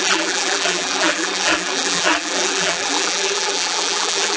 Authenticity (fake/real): fake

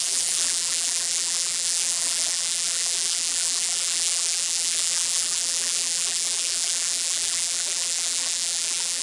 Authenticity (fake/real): fake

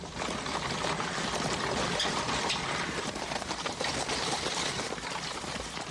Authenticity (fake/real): real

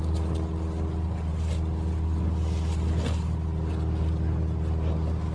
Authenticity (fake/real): real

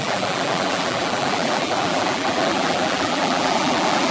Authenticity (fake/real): fake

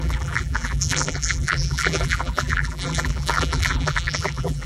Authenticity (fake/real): fake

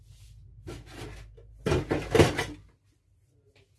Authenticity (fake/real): real